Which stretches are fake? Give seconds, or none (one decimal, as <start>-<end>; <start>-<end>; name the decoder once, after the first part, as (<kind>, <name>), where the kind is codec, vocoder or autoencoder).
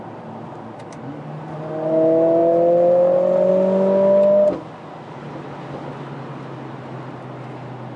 2.4-3.5 (vocoder, BigVGAN v2)